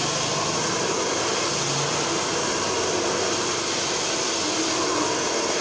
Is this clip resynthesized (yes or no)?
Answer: no